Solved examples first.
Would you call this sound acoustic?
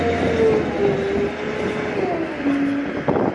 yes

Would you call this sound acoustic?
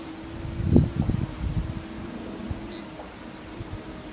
yes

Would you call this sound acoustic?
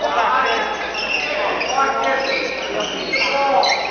yes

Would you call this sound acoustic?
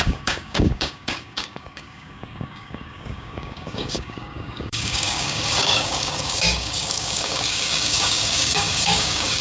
no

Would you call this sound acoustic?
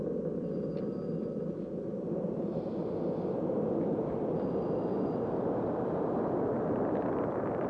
yes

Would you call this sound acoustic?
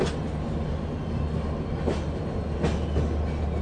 yes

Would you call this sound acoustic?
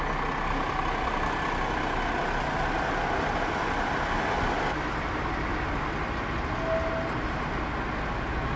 yes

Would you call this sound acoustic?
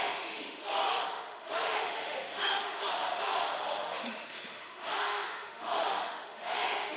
no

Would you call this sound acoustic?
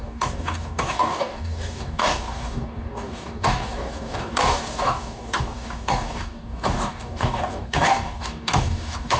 no